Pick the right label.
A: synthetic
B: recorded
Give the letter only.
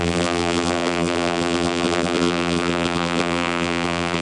A